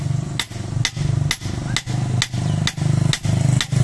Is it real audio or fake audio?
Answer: real